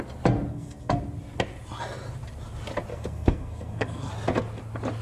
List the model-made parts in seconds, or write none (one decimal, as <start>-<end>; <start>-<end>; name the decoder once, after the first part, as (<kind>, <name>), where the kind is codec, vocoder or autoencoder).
0.5-1.0 (codec, SNAC); 2.9-4.1